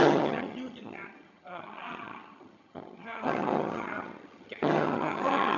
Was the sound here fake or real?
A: fake